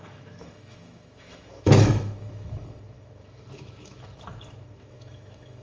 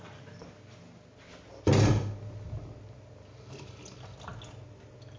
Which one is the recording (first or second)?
second